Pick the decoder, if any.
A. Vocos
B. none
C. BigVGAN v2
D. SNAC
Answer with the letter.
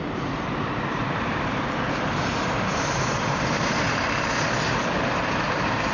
C